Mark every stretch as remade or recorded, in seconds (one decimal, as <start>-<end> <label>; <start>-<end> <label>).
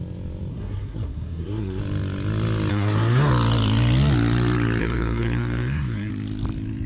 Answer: 0.0-0.5 recorded; 0.5-1.8 remade; 1.8-2.7 recorded; 2.7-3.3 remade; 3.3-4.8 recorded; 4.8-6.1 remade; 6.1-6.9 recorded